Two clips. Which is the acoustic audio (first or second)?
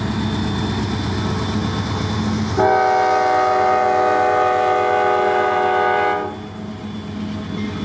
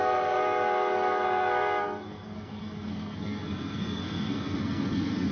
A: first